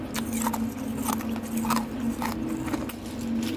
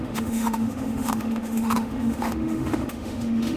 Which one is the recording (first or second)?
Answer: first